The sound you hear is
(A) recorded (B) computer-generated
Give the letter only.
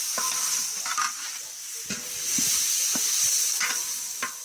A